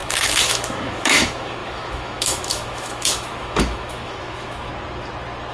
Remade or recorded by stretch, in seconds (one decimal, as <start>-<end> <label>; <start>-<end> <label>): 0.0-4.7 remade; 4.7-5.5 recorded